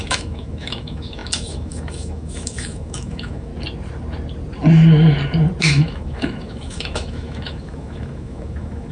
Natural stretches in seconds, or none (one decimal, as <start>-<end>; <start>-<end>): 3.5-5.6